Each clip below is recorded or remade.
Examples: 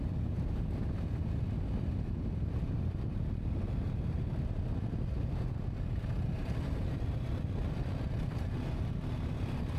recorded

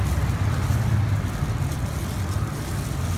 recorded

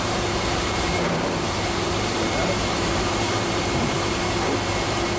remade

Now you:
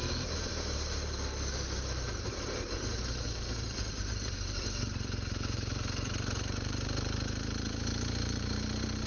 remade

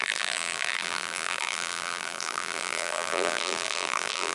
remade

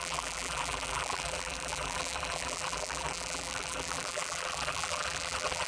remade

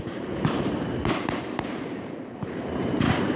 remade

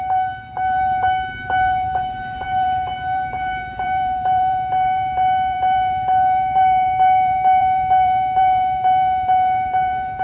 remade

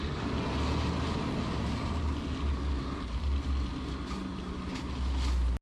recorded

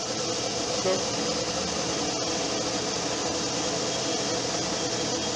recorded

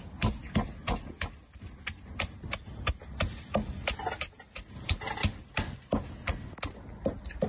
recorded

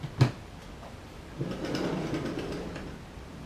recorded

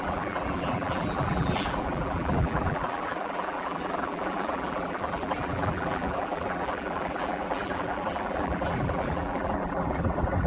remade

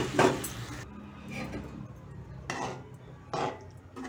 recorded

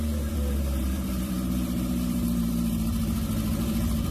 remade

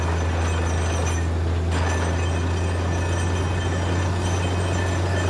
recorded